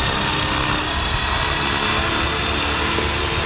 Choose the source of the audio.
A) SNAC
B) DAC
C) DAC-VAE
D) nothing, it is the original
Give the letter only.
D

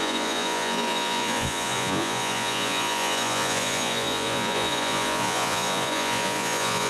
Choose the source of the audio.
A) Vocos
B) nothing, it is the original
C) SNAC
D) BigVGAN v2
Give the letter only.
A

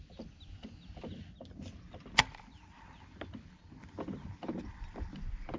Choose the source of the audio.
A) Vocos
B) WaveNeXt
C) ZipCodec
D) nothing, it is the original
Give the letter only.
D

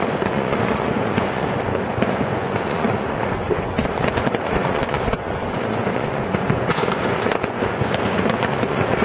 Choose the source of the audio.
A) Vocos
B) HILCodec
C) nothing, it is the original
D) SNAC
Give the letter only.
A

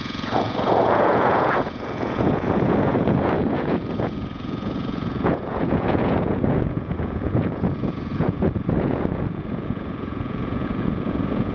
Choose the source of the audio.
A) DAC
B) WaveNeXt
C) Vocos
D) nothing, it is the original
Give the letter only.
C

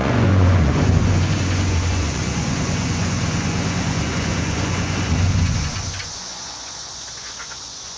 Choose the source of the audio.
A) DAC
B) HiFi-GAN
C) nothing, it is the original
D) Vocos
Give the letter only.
D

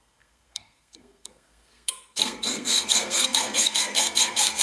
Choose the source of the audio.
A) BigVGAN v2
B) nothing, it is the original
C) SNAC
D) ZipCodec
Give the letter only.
C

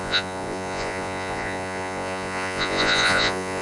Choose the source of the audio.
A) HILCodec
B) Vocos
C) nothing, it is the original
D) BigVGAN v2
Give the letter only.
B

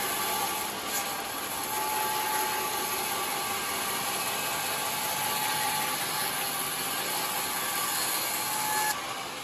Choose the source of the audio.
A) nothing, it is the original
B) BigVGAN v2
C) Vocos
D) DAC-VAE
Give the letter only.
A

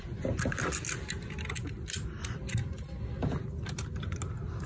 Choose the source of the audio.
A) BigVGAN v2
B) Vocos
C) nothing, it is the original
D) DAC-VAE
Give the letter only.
C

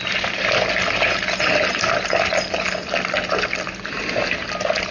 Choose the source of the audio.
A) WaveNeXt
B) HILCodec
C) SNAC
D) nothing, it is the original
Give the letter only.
D